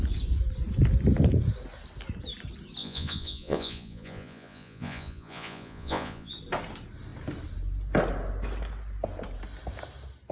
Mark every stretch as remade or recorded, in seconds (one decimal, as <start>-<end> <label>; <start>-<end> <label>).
0.0-2.8 recorded; 2.8-6.3 remade; 6.3-10.3 recorded